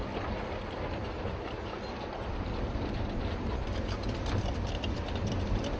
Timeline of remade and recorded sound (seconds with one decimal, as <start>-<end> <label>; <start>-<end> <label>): 0.0-5.8 recorded